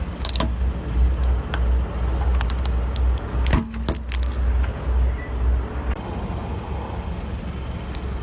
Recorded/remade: recorded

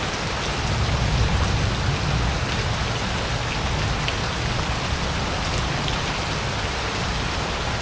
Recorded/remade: recorded